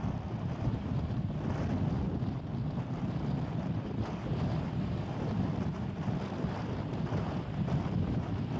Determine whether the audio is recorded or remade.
remade